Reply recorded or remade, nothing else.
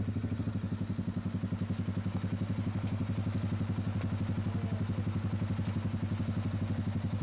recorded